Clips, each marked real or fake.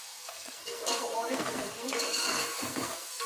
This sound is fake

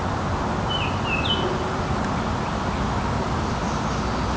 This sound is real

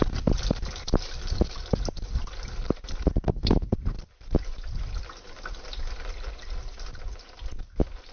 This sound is real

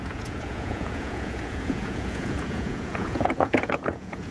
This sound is fake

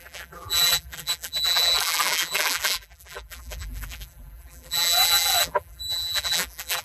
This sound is fake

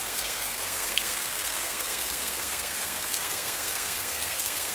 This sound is fake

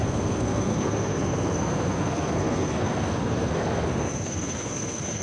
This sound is fake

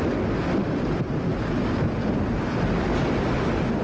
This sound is real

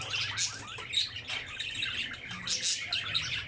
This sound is real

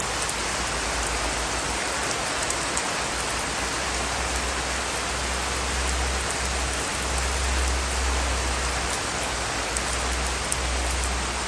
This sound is real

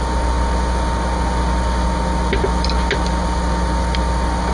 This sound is real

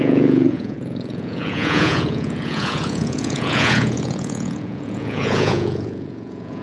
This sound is fake